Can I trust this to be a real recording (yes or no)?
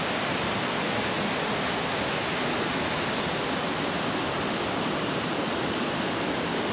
yes